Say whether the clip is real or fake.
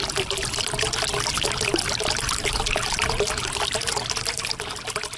real